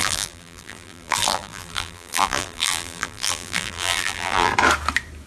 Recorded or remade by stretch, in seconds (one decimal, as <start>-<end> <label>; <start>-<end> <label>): 0.0-4.5 remade; 4.5-5.3 recorded